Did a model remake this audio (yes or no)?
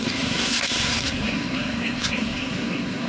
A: yes